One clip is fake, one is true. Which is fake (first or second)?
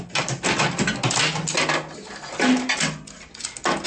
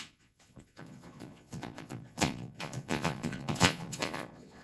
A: second